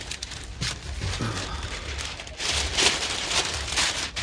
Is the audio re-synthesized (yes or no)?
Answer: yes